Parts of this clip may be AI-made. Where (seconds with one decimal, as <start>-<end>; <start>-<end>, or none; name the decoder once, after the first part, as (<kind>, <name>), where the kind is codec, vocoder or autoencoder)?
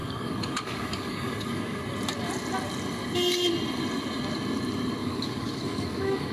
0.0-1.8 (codec, DAC); 5.0-6.3